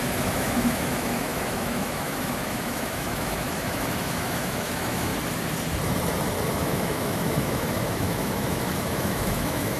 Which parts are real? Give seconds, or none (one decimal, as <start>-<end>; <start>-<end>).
5.1-6.5